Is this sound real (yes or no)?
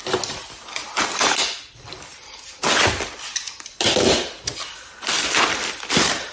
yes